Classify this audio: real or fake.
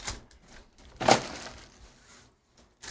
real